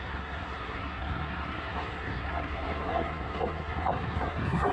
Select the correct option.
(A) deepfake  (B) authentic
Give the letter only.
A